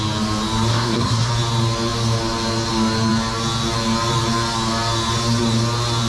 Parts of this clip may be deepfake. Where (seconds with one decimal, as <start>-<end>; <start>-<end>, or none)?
0.7-1.3